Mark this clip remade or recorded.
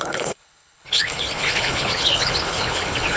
remade